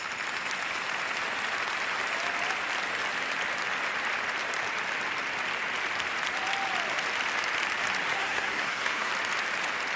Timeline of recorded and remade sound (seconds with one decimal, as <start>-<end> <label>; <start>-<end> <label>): 0.0-8.1 recorded; 8.1-9.1 remade; 9.1-10.0 recorded